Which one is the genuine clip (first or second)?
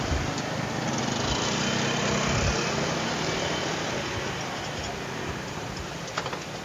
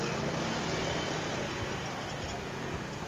second